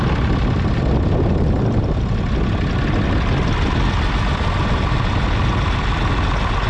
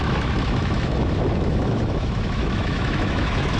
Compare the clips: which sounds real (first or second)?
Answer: first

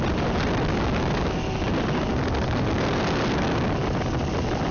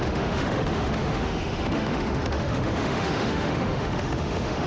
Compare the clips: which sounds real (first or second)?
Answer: first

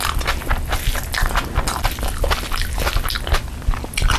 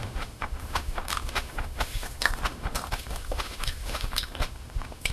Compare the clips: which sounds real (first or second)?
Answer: first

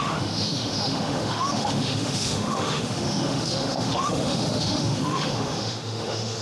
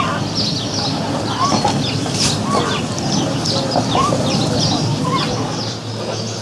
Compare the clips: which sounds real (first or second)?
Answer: second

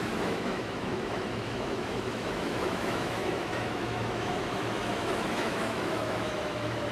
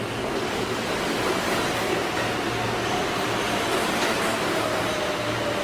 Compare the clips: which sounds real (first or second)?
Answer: second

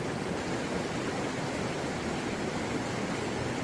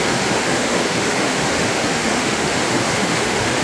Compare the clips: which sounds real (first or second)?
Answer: first